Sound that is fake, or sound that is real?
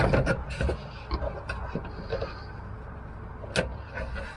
real